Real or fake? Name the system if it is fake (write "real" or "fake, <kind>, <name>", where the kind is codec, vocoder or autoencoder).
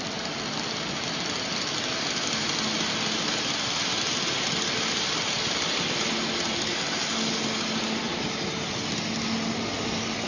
real